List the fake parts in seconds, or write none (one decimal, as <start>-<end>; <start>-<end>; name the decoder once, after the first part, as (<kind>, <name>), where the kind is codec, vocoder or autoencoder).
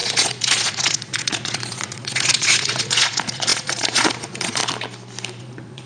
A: 0.0-4.6 (vocoder, Vocos); 5.4-5.9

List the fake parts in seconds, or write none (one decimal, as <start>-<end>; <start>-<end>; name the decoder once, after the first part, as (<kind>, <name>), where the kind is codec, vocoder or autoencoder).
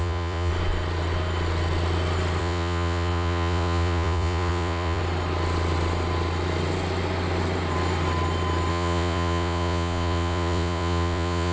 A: 0.0-0.5 (vocoder, Vocos); 2.4-5.0; 8.7-11.5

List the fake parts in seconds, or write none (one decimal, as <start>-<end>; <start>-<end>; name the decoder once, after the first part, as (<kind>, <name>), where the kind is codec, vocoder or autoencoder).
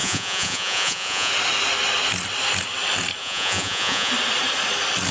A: 0.0-1.3 (vocoder, Vocos); 3.2-4.1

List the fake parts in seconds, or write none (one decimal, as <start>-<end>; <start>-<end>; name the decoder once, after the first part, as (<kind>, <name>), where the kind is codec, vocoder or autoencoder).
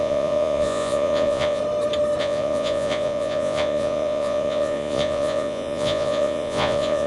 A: 0.0-1.6 (vocoder, Vocos); 2.2-7.1